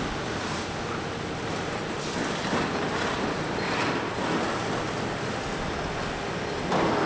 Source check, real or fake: fake